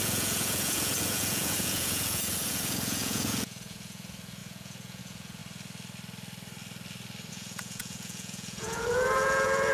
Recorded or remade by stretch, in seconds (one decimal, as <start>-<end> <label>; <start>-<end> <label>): 0.0-5.4 remade; 5.4-7.3 recorded; 7.3-9.7 remade